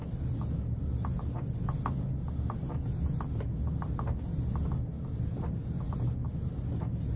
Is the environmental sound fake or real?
real